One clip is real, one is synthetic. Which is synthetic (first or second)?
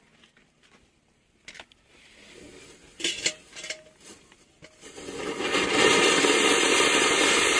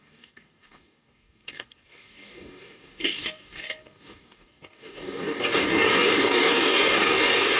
second